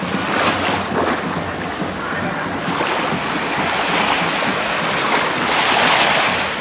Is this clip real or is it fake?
real